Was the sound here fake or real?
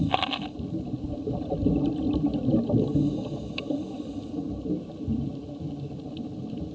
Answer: real